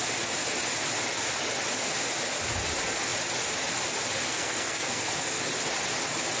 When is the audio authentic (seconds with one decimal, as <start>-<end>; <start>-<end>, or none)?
0.0-4.3; 5.4-6.4